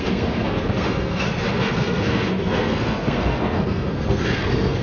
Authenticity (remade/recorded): remade